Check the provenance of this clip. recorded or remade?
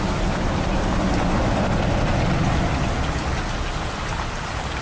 recorded